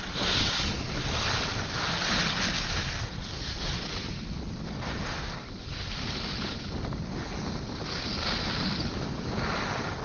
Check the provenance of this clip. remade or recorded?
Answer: recorded